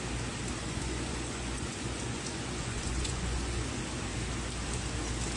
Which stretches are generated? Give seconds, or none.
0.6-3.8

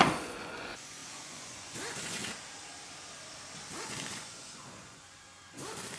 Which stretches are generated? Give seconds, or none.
0.0-2.2; 3.8-6.0